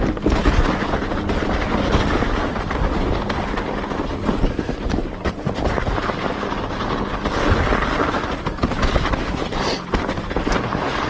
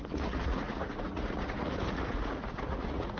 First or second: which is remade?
second